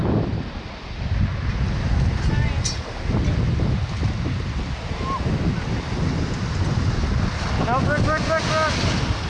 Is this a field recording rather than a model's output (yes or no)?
yes